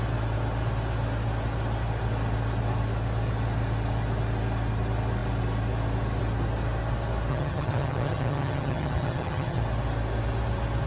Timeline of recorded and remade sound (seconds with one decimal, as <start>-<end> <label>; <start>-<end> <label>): 0.0-7.3 recorded; 7.3-9.6 remade; 9.6-10.9 recorded